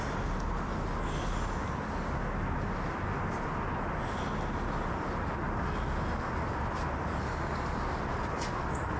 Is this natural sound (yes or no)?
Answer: yes